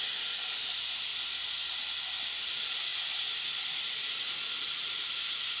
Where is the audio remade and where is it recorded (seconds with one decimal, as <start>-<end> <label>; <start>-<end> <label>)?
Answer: 0.0-5.6 recorded

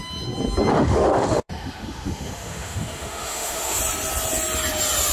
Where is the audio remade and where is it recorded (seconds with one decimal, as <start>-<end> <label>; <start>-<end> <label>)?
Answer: 0.0-0.7 recorded; 0.7-3.8 remade; 3.8-5.1 recorded

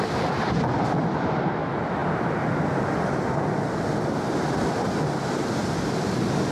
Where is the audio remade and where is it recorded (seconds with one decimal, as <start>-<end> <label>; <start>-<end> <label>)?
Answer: 0.0-6.5 recorded

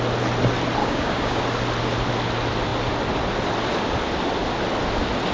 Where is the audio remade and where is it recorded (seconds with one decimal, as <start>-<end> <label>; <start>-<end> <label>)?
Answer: 0.0-0.8 recorded; 0.8-1.4 remade; 1.4-5.3 recorded

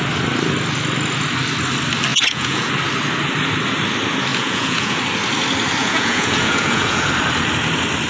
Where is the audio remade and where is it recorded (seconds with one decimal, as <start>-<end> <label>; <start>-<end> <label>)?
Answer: 0.0-2.1 recorded; 2.1-2.7 remade; 2.7-4.3 recorded; 4.3-5.0 remade; 5.0-5.8 recorded; 5.8-7.1 remade; 7.1-8.1 recorded

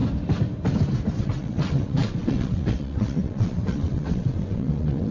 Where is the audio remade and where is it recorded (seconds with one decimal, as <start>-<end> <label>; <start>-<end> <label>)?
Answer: 0.0-1.2 recorded; 1.2-5.1 remade